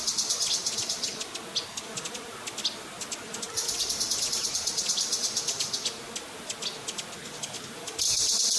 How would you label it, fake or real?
real